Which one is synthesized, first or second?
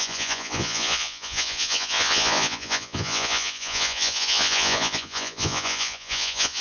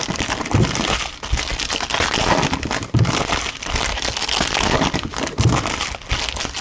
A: first